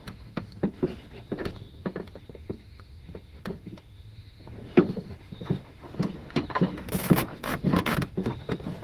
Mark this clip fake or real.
fake